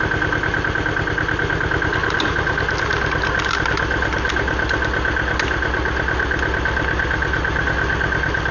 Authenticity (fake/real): real